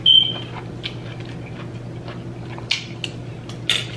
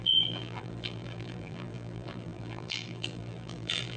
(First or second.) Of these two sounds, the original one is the first